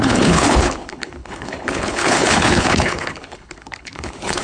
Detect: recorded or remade remade